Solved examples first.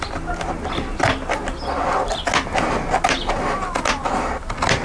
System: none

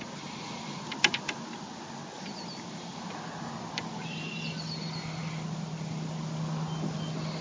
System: none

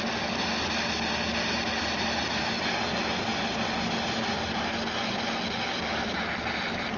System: none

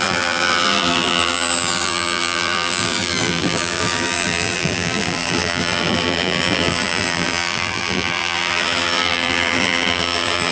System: vocoder, BigVGAN v2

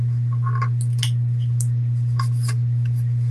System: none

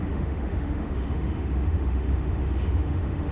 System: autoencoder, DAC-VAE